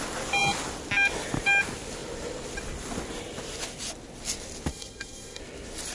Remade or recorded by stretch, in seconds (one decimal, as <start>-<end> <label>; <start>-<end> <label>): 0.0-4.7 recorded; 4.7-5.4 remade; 5.4-5.9 recorded